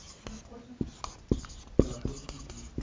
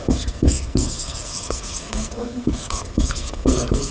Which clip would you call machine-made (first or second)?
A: second